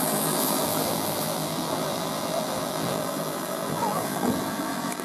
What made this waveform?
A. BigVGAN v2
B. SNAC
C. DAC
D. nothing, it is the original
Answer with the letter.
A